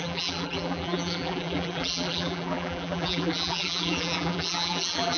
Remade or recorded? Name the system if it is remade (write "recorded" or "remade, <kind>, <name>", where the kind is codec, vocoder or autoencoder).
remade, vocoder, BigVGAN v2